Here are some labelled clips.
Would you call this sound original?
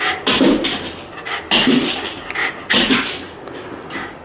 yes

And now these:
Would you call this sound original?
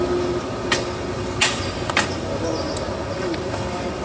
yes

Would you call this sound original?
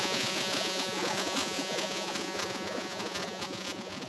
no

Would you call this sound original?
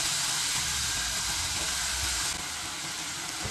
yes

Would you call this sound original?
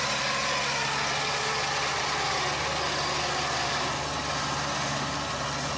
yes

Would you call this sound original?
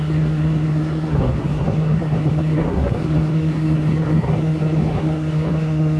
no